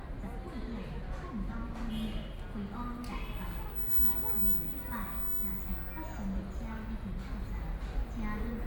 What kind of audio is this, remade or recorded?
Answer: recorded